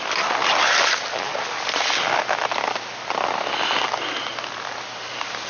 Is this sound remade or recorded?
recorded